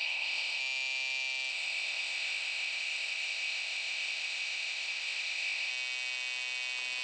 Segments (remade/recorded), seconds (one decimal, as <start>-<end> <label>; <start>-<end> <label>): 0.0-0.6 remade; 0.6-1.5 recorded; 1.5-5.7 remade; 5.7-7.0 recorded